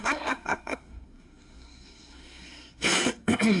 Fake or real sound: fake